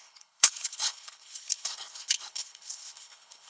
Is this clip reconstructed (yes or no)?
yes